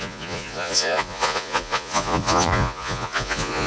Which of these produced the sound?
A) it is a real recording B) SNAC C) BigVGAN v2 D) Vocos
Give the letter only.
D